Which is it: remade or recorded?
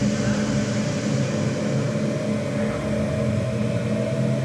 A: recorded